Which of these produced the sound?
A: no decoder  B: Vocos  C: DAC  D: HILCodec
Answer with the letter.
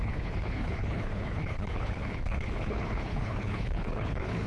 D